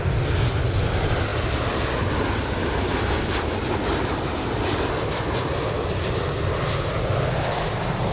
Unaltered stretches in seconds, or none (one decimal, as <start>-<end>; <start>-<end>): 0.0-8.1